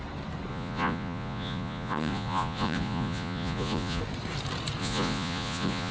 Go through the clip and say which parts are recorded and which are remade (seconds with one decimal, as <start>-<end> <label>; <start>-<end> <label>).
0.0-0.5 recorded; 0.5-4.0 remade; 4.0-4.8 recorded; 4.8-5.9 remade